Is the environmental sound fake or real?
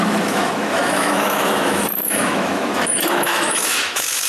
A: fake